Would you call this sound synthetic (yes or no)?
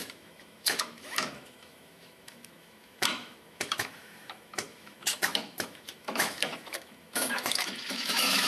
yes